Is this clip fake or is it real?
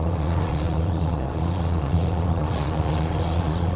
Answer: fake